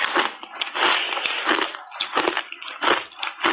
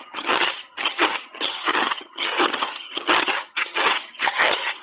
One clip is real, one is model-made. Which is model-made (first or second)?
second